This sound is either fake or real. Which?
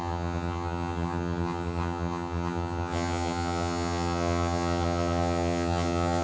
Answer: fake